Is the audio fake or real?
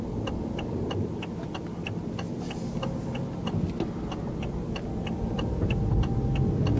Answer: real